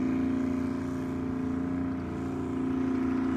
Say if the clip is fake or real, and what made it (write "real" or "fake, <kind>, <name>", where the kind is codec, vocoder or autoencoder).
real